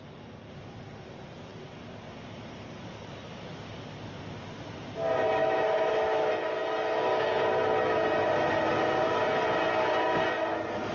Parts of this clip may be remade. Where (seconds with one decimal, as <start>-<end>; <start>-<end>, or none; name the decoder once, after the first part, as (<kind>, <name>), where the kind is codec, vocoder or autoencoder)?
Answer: 5.4-6.3 (autoencoder, DAC-VAE)